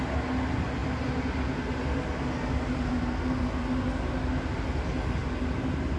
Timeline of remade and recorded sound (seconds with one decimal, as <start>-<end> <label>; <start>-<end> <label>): 0.0-6.0 recorded